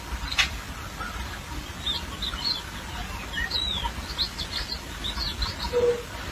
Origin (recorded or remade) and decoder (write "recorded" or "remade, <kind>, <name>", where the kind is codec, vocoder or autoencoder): recorded